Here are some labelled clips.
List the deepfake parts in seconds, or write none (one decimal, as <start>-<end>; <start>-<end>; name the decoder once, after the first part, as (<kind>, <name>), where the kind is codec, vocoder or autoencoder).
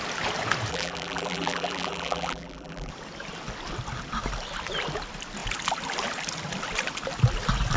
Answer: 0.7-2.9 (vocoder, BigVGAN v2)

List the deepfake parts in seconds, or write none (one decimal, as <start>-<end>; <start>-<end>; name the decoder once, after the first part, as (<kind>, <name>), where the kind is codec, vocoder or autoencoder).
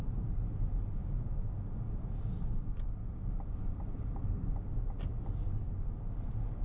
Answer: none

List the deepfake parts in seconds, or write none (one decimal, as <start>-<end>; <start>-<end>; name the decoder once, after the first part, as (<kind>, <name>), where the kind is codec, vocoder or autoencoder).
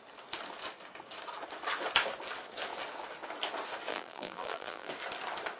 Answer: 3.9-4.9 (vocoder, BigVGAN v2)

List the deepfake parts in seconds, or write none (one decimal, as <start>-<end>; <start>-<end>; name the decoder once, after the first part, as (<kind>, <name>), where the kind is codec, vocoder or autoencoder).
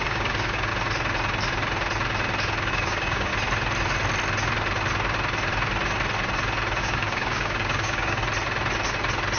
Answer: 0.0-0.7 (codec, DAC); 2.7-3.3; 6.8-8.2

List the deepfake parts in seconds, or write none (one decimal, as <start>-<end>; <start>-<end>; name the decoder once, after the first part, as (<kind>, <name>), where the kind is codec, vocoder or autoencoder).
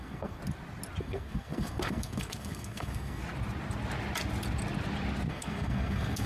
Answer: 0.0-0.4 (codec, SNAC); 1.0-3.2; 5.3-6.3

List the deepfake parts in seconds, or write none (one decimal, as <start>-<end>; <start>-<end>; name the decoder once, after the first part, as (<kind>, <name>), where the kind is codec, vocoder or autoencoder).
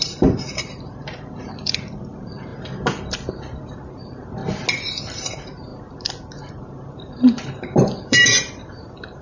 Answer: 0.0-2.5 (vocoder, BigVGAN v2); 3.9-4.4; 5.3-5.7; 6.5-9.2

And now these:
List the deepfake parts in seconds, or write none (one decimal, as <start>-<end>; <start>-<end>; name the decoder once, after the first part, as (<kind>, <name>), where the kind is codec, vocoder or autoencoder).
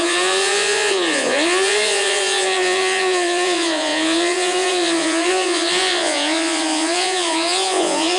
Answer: 0.0-8.2 (vocoder, Vocos)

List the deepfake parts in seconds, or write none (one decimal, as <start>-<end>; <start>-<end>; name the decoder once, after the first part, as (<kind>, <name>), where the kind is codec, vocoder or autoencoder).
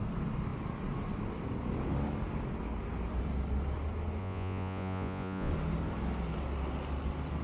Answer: 4.2-5.5 (vocoder, Vocos)